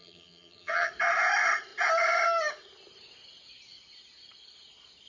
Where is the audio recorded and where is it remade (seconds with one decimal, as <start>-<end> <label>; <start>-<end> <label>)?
0.0-0.9 remade; 0.9-5.1 recorded